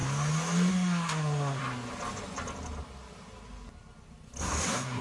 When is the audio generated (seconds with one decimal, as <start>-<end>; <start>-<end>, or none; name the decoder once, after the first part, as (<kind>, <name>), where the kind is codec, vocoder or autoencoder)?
0.7-1.6 (codec, SNAC); 4.4-5.0